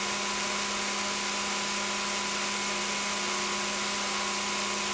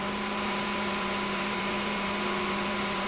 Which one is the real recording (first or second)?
first